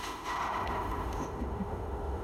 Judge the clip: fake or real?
fake